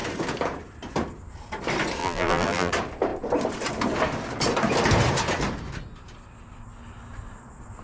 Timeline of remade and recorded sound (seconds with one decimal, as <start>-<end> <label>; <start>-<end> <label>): 0.0-2.0 recorded; 2.0-2.7 remade; 2.7-7.8 recorded